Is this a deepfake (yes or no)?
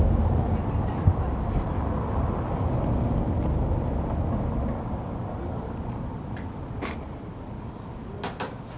no